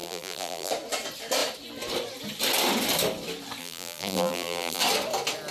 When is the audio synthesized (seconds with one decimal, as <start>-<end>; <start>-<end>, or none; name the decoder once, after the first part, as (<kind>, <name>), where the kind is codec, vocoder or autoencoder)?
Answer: 0.0-0.7 (vocoder, BigVGAN v2); 3.6-4.8